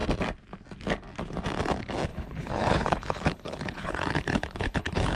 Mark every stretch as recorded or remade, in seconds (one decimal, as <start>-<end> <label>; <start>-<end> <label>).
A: 0.0-2.1 recorded; 2.1-5.2 remade